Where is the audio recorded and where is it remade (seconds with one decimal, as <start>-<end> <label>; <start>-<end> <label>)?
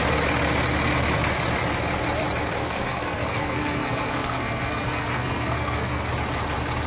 0.0-2.6 recorded; 2.6-6.1 remade; 6.1-6.9 recorded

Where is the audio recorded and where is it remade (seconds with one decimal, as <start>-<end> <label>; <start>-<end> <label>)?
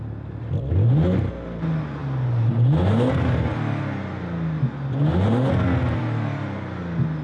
0.0-7.2 recorded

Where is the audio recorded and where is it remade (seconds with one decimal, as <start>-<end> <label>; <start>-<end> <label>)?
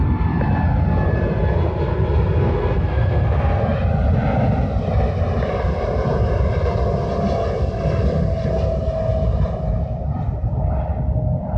0.0-2.4 recorded; 2.4-3.6 remade; 3.6-11.6 recorded